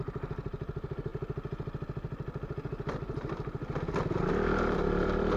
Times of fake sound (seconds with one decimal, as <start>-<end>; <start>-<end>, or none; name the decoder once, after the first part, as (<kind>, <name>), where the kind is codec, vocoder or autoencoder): 0.0-1.1 (vocoder, BigVGAN v2); 4.3-5.4